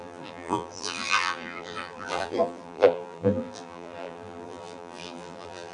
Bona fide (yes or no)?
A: no